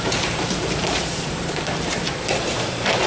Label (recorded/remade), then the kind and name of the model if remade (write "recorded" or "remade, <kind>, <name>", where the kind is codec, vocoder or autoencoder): remade, vocoder, BigVGAN v2